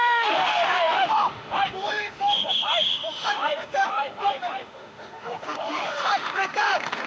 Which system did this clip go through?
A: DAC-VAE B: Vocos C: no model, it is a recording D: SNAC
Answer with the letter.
A